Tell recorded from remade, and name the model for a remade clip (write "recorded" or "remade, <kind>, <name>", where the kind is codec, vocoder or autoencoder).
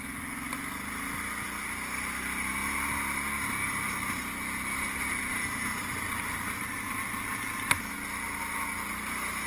recorded